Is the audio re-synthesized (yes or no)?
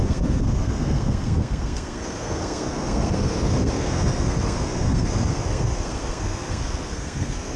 yes